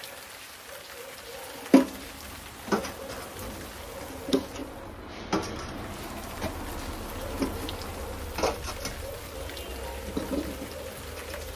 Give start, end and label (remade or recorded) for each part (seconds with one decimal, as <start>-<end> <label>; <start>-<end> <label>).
0.0-11.6 recorded